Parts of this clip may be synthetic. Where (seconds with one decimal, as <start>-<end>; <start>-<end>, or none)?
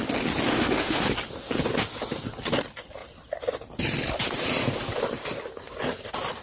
0.5-1.0